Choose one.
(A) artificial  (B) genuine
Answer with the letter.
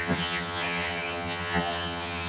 A